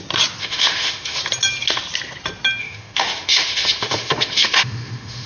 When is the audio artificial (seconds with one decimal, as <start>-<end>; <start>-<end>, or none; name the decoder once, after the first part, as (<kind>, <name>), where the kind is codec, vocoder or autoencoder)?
0.4-1.2 (autoencoder, DAC-VAE); 2.6-5.3